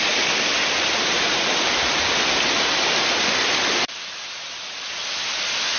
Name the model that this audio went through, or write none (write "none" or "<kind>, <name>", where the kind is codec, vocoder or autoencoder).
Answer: none